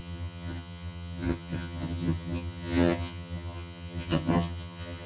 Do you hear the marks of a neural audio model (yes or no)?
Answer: yes